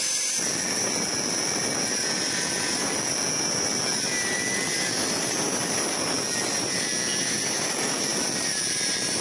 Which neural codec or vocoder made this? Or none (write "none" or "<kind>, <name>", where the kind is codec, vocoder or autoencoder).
none